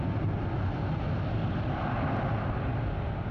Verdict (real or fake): real